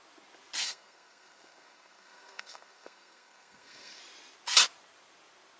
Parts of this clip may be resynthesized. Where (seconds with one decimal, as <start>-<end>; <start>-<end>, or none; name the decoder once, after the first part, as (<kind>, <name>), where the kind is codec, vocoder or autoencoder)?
0.6-4.0 (codec, SNAC)